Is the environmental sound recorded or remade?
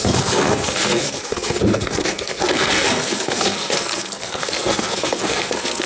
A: remade